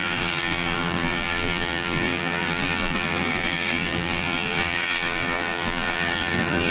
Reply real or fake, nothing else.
fake